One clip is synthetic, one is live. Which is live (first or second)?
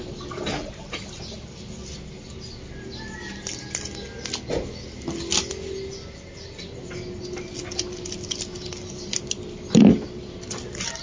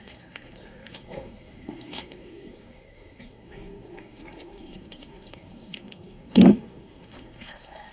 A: first